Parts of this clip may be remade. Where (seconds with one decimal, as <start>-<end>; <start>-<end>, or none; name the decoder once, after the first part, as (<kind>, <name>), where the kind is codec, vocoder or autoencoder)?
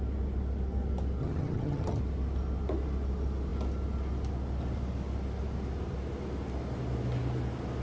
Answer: 1.2-2.0 (vocoder, HiFi-GAN)